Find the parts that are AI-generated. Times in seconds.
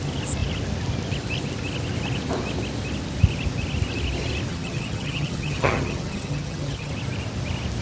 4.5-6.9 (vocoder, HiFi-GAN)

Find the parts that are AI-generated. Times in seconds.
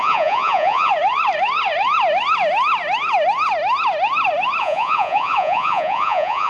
0.0-0.9 (vocoder, Vocos); 4.6-6.5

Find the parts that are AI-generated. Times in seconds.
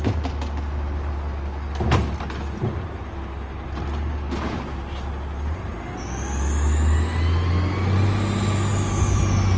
none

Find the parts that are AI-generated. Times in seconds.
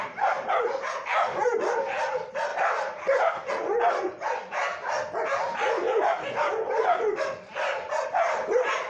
2.5-3.5 (vocoder, BigVGAN v2)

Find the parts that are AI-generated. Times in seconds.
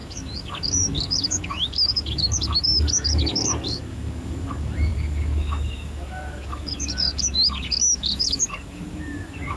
0.0-9.6 (codec, DAC)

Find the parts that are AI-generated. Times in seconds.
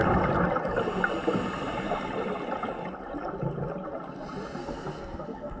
4.6-5.6 (codec, SNAC)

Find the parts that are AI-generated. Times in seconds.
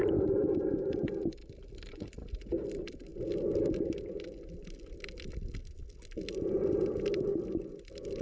none